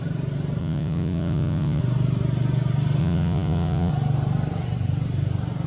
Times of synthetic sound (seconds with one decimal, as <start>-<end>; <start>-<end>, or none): 0.6-1.8; 3.0-3.9

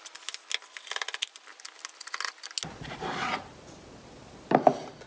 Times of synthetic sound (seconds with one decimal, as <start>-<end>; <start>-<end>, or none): none

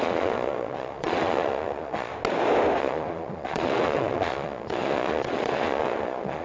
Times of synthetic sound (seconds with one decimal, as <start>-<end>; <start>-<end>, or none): 0.0-2.1; 2.8-6.4